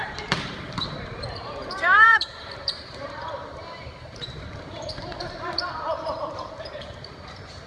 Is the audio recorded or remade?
remade